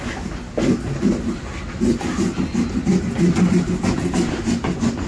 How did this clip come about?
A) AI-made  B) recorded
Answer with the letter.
B